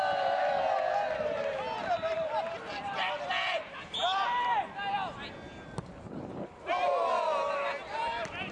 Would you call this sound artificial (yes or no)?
no